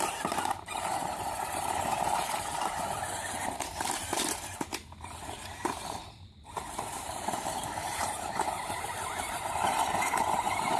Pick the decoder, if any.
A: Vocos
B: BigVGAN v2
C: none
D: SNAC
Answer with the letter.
B